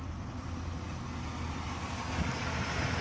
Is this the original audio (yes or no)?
yes